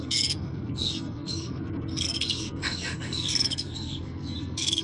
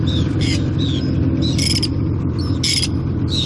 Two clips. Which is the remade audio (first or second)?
first